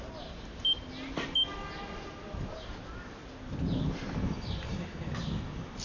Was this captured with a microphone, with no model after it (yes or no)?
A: yes